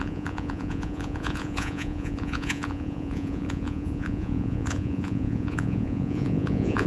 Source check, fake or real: fake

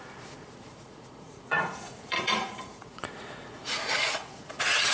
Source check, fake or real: fake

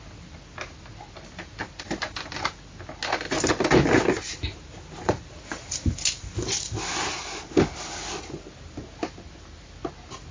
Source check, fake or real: real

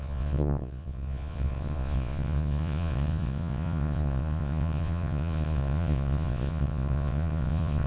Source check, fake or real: fake